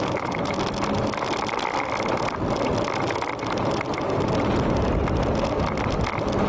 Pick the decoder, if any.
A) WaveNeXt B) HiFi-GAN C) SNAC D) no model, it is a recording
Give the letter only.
D